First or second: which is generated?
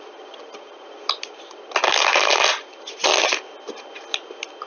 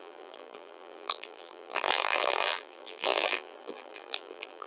second